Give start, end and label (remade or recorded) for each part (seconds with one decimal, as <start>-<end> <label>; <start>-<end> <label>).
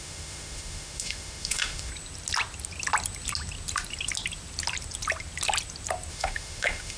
0.0-1.9 remade; 1.9-6.1 recorded; 6.1-7.0 remade